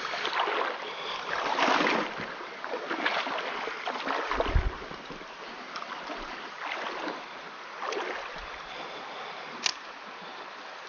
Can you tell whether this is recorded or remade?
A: recorded